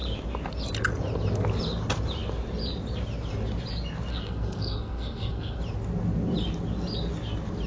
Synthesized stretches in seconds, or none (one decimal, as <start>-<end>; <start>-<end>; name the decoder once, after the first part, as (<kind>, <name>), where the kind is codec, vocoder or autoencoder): 4.1-5.6 (codec, SNAC)